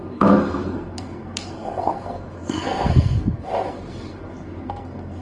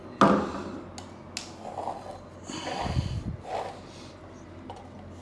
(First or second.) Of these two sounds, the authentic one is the second